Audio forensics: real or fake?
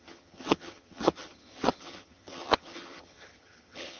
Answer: fake